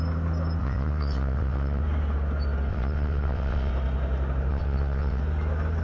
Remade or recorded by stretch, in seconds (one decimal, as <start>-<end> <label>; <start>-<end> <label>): 0.0-0.6 recorded; 0.6-1.8 remade; 1.8-2.7 recorded; 2.7-3.7 remade; 3.7-4.5 recorded; 4.5-5.2 remade; 5.2-5.8 recorded